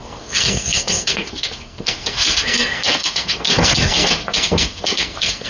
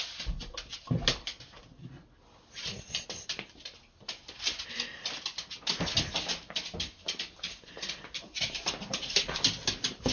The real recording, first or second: second